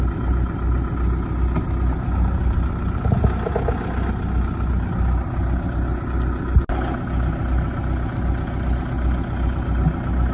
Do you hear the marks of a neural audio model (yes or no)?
no